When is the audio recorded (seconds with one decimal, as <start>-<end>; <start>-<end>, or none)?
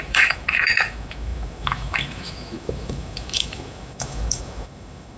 none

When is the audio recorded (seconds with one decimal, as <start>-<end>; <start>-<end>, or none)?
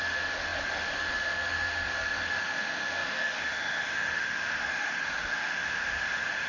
none